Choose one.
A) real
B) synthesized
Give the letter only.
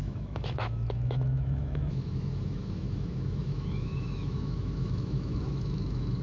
B